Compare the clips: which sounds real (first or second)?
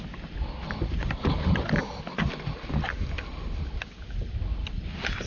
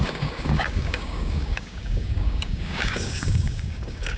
first